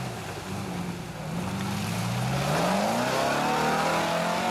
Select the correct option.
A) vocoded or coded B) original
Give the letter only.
B